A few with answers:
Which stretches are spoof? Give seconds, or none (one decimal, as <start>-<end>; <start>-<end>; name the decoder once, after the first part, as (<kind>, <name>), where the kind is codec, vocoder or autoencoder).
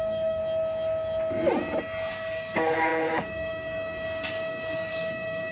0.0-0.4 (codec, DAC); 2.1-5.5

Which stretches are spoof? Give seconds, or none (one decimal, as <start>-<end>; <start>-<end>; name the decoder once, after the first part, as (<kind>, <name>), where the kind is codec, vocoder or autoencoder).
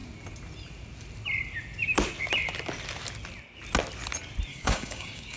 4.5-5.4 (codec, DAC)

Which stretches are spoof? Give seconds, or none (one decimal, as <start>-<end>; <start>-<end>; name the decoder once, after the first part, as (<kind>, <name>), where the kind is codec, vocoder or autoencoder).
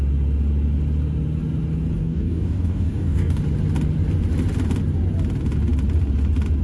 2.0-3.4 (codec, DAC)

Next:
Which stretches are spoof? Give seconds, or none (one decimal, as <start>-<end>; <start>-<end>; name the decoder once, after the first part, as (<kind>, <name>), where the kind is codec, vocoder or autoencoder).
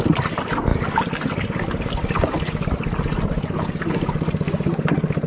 none